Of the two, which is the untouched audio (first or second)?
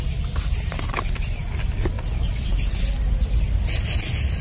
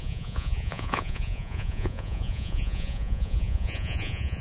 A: first